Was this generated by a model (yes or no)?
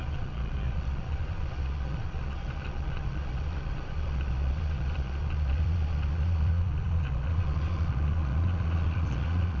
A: yes